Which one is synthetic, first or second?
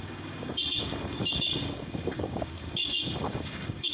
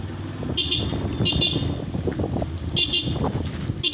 first